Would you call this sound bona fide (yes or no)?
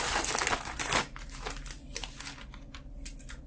yes